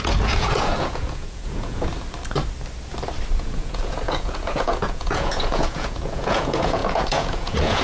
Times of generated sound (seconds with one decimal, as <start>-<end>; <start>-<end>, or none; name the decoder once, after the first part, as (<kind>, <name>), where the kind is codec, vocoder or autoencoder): 0.0-1.9 (vocoder, Vocos); 3.3-7.8